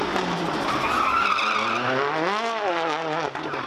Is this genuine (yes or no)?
yes